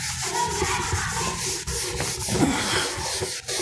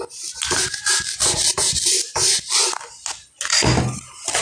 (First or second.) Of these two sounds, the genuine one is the second